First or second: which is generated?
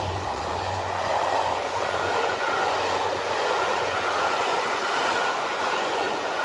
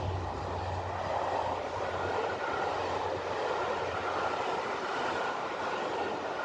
first